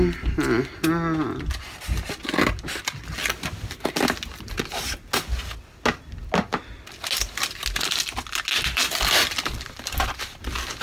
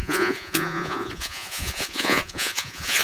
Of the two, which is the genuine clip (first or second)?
first